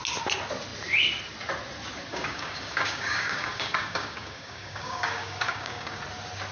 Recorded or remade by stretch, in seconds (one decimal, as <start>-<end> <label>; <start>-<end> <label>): 0.0-2.1 recorded; 2.1-6.0 remade; 6.0-6.5 recorded